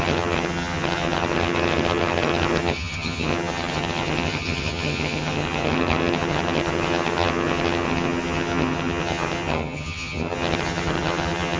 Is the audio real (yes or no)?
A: no